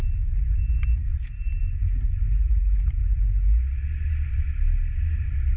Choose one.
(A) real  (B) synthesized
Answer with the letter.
A